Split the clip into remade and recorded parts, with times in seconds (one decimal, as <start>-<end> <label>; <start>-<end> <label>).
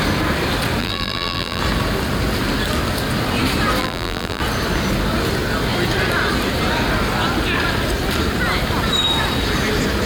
0.0-0.8 recorded; 0.8-1.6 remade; 1.6-3.8 recorded; 3.8-4.4 remade; 4.4-10.1 recorded